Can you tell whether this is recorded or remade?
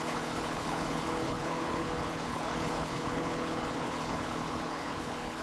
remade